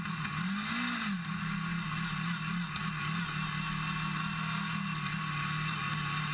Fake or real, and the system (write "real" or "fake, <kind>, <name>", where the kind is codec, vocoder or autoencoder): real